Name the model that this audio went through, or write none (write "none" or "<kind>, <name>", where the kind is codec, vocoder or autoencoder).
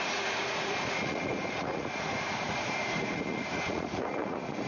vocoder, Vocos